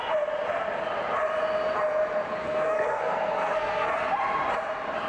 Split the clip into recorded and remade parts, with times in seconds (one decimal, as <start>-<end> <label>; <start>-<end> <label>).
0.0-2.4 recorded; 2.4-3.9 remade; 3.9-5.1 recorded